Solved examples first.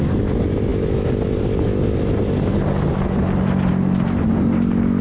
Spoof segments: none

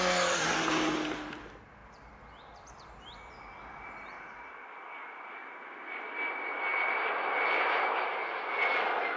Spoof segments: none

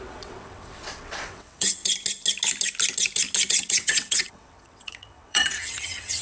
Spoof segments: 0.0-1.8 (vocoder, WaveNeXt); 3.5-6.2